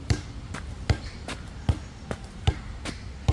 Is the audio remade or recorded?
recorded